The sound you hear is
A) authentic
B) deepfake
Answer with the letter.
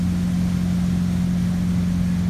A